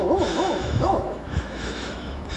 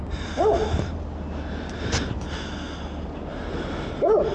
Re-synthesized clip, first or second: first